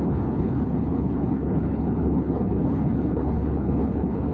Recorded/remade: remade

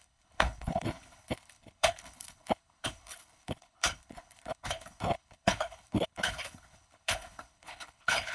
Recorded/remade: remade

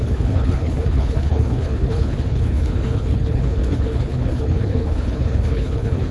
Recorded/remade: remade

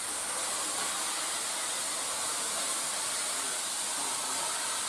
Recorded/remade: recorded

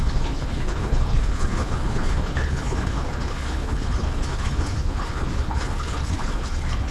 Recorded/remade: remade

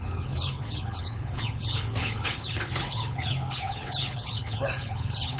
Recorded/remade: remade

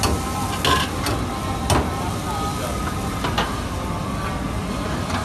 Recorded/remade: recorded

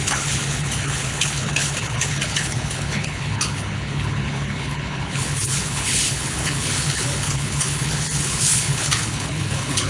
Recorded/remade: remade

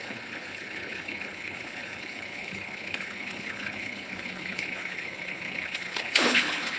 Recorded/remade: remade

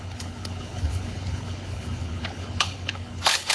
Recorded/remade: remade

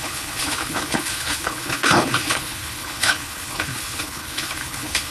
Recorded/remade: remade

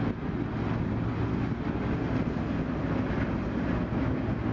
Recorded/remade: recorded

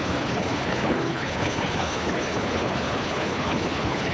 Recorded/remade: remade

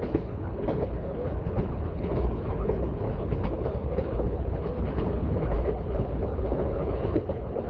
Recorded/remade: remade